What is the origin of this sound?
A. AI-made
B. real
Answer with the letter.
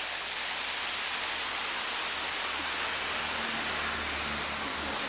B